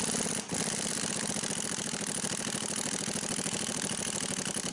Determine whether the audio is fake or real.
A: real